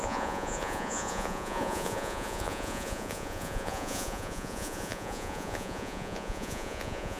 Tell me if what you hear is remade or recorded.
remade